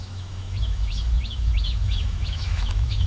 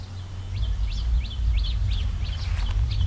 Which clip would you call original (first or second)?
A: second